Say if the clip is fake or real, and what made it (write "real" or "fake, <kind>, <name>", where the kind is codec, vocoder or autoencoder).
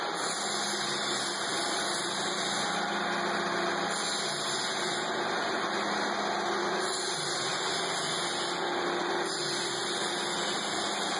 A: real